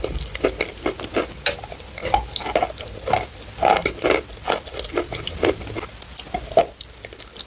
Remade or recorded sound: recorded